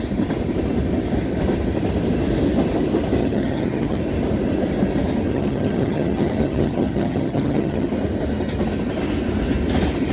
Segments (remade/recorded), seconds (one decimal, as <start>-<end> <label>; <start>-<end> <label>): 0.0-3.2 recorded; 3.2-4.0 remade; 4.0-5.3 recorded; 5.3-7.9 remade; 7.9-10.1 recorded